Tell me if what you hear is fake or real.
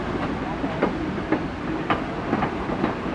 real